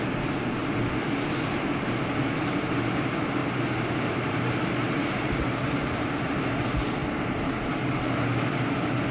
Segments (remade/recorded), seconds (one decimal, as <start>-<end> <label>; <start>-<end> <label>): 0.0-3.4 recorded; 3.4-6.6 remade; 6.6-9.1 recorded